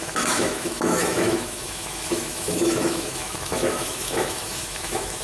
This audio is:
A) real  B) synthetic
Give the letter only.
B